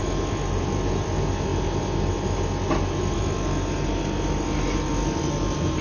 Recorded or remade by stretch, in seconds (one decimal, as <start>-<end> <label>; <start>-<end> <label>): 0.0-5.8 recorded